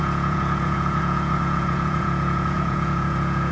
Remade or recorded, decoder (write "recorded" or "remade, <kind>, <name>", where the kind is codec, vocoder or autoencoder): remade, vocoder, Vocos